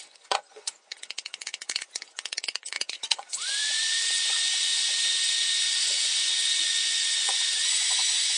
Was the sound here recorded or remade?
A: remade